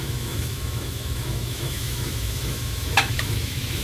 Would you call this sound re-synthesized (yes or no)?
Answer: yes